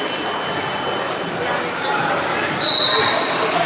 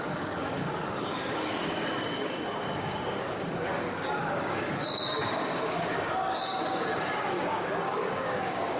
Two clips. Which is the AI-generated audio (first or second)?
second